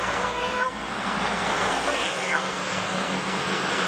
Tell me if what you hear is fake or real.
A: fake